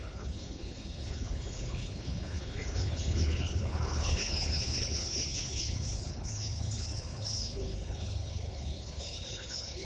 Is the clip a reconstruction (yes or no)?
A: yes